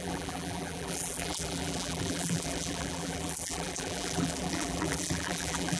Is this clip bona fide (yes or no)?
no